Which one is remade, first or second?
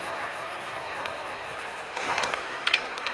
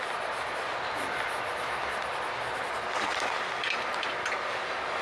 first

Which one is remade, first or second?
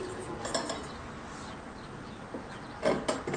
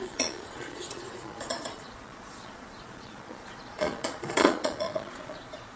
second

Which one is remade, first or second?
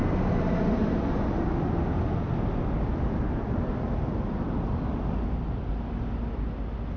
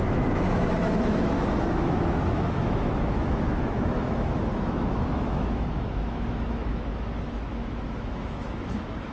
second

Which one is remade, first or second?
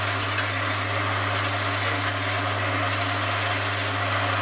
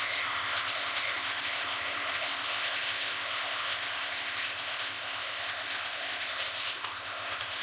second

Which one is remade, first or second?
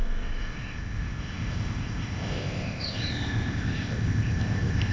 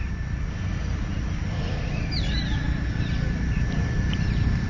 first